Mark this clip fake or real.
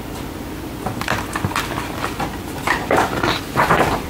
real